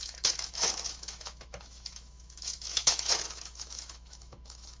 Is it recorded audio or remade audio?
remade